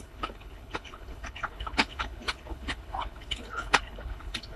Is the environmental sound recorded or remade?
remade